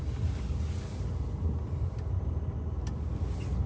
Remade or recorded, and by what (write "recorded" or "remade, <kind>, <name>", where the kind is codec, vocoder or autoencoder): recorded